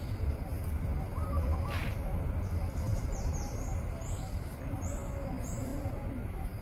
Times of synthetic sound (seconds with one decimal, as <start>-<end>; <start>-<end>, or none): 2.9-4.6